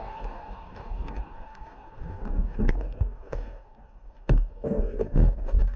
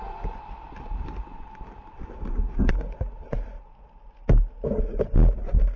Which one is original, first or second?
second